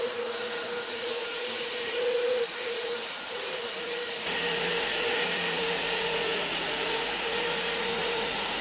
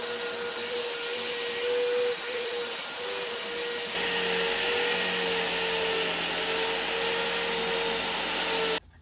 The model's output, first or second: first